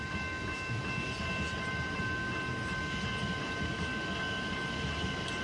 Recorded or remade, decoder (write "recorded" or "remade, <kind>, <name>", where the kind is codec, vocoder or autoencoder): recorded